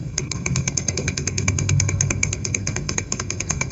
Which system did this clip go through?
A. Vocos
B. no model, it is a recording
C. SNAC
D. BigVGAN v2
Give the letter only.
C